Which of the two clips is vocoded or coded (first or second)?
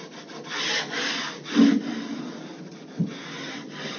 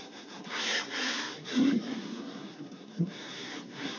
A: second